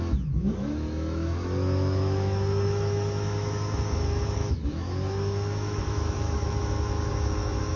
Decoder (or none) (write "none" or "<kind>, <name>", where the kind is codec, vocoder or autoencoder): autoencoder, DAC-VAE